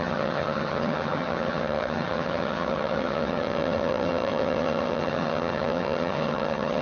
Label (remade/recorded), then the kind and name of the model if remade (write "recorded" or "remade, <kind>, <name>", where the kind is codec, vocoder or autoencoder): remade, vocoder, HiFi-GAN